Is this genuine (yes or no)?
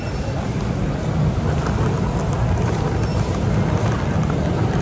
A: yes